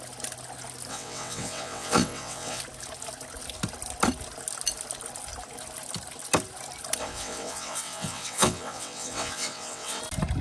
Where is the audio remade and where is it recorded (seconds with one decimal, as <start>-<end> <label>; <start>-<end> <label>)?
0.0-0.9 recorded; 0.9-2.6 remade; 2.6-7.0 recorded; 7.0-10.0 remade; 10.0-10.4 recorded